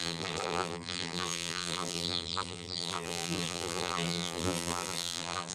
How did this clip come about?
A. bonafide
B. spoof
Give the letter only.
B